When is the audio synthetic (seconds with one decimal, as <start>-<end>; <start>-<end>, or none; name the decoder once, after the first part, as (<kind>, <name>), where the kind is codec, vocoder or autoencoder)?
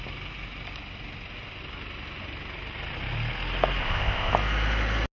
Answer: 3.8-4.3 (codec, ZipCodec)